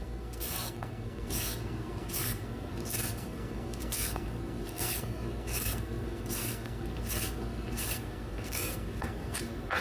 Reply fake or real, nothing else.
fake